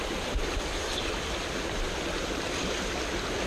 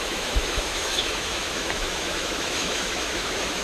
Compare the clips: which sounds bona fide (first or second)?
first